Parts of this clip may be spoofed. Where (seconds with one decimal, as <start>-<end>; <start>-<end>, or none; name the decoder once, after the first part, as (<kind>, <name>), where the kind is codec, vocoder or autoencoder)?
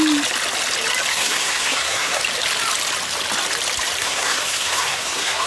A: 1.1-2.2 (codec, SNAC); 4.0-5.5